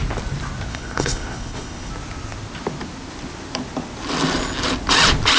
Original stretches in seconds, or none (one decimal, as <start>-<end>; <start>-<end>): 0.0-0.7; 1.9-5.4